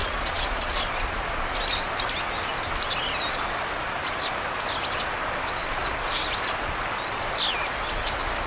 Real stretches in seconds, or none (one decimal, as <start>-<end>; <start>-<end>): 0.9-8.5